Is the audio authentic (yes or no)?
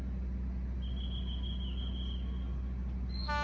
yes